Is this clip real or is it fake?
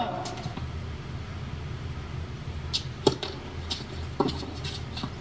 real